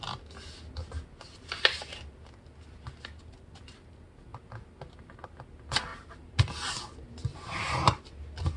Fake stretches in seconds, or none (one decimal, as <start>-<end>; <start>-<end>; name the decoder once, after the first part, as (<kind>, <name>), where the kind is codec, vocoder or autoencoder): 5.9-6.7 (vocoder, BigVGAN v2); 7.3-8.1